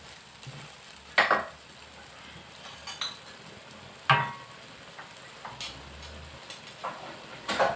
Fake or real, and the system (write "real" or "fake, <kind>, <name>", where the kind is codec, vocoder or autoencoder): real